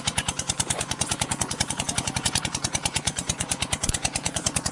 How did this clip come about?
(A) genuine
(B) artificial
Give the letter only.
B